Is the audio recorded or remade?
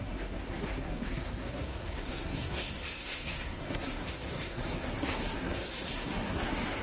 remade